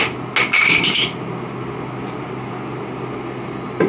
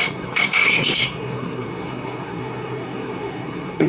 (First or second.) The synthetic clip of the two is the second